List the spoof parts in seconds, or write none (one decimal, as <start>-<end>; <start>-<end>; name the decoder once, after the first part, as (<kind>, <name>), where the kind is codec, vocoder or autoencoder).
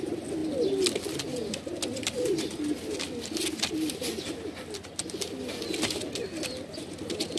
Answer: none